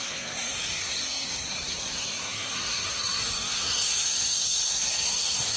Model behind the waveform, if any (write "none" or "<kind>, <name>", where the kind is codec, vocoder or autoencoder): codec, SNAC